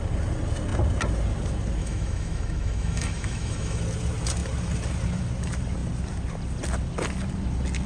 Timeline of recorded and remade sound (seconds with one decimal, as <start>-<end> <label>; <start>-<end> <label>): 0.0-1.8 recorded; 1.8-3.8 remade; 3.8-7.9 recorded